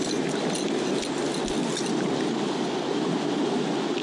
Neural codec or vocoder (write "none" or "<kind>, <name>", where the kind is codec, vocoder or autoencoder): none